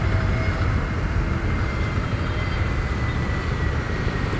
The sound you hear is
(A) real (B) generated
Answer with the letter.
A